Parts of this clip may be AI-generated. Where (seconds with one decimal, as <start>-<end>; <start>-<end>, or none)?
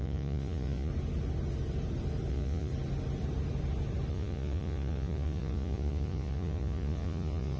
0.0-0.9; 2.3-2.7; 4.1-7.6